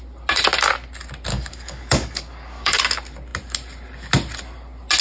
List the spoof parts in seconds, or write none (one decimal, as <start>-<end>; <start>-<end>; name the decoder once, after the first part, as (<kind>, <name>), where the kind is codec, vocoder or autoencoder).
1.3-2.8 (codec, DAC)